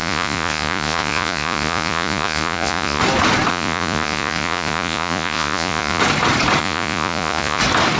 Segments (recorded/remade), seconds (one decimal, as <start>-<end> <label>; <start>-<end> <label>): 0.0-3.0 remade; 3.0-3.5 recorded; 3.5-6.0 remade; 6.0-6.6 recorded; 6.6-7.6 remade; 7.6-8.0 recorded